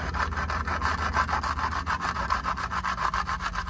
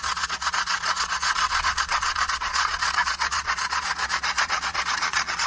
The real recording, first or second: first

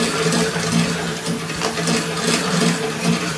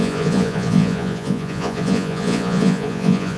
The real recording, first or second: first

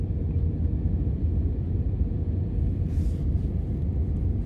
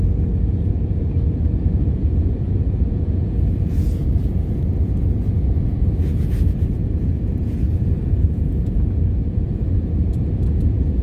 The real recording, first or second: first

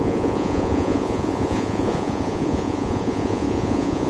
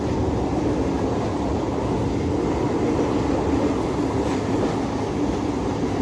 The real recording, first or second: second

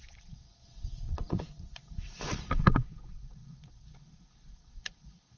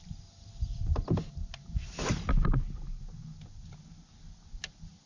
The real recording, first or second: second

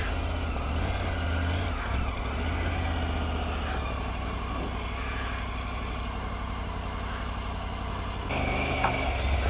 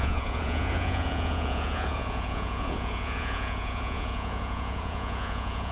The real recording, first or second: first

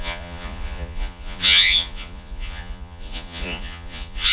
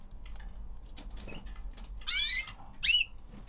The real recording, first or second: second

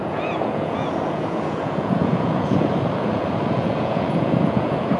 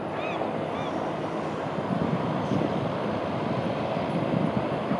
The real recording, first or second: second